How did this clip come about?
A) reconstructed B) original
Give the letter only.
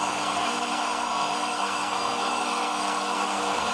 A